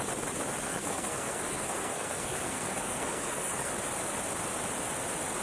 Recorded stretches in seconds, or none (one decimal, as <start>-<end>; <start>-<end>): 0.0-0.6; 3.7-5.4